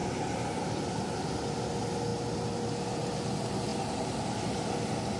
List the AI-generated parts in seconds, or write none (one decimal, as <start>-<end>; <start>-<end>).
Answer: none